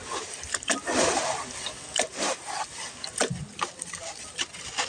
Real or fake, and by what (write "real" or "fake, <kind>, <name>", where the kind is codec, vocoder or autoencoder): real